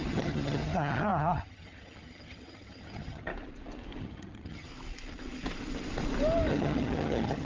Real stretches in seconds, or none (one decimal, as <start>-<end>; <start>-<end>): 3.3-4.0; 4.7-6.5